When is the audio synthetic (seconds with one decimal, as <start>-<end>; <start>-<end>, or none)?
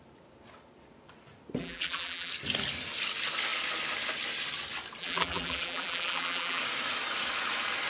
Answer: 1.6-2.3; 5.0-6.6